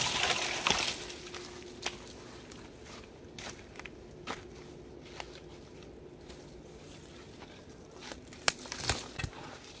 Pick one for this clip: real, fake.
real